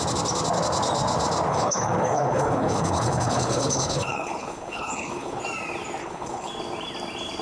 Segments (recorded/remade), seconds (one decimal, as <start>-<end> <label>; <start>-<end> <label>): 0.0-1.5 recorded; 1.5-5.4 remade; 5.4-6.0 recorded; 6.0-6.5 remade; 6.5-7.4 recorded